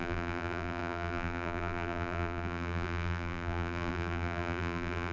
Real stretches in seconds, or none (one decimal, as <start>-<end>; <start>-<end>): none